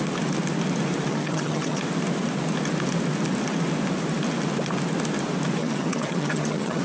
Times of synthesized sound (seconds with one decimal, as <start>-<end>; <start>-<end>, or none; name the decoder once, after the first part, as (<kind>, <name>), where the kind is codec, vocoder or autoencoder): 1.1-1.8 (vocoder, HiFi-GAN); 5.6-6.8